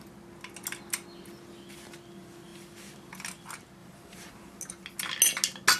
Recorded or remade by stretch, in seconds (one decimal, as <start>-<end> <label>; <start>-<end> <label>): 0.0-3.8 recorded; 3.8-4.6 remade; 4.6-5.8 recorded